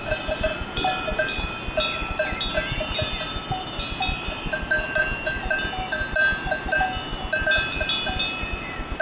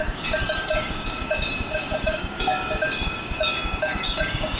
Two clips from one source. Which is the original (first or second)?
first